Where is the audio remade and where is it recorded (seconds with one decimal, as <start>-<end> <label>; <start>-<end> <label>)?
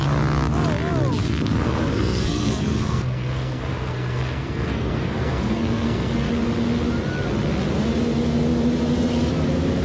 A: 0.0-1.2 recorded; 1.2-6.3 remade; 6.3-9.8 recorded